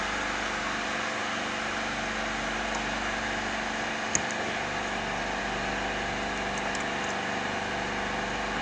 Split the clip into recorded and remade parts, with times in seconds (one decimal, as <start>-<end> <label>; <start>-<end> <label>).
0.0-8.6 recorded